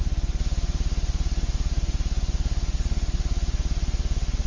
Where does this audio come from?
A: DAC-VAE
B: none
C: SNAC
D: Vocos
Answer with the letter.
B